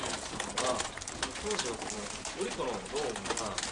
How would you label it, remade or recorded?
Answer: recorded